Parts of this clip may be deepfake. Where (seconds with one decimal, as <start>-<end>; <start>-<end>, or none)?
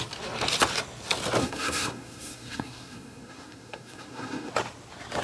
1.4-4.5